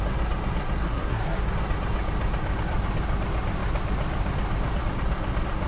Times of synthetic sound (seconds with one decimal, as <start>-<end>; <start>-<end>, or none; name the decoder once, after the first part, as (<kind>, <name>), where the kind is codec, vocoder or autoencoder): 0.8-1.5 (codec, SNAC)